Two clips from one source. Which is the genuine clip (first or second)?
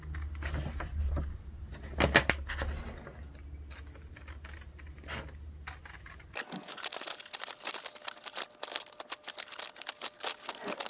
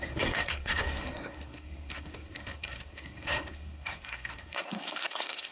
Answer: first